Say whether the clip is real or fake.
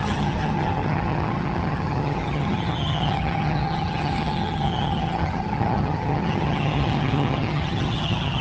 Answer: fake